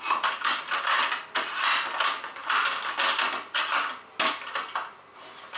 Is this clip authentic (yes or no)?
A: yes